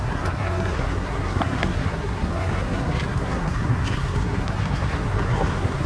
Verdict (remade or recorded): remade